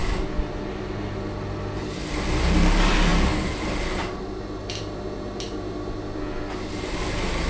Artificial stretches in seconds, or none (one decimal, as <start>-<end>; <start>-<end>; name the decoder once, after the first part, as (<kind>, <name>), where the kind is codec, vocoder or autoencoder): none